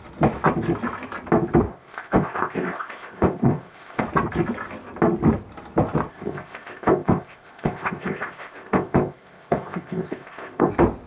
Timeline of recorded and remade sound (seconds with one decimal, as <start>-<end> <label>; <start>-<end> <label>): 0.0-1.7 recorded; 1.7-4.0 remade; 4.0-6.1 recorded; 6.1-10.7 remade; 10.7-11.1 recorded